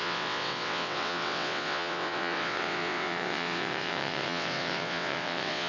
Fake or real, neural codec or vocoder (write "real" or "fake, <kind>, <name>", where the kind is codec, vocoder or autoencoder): fake, vocoder, WaveNeXt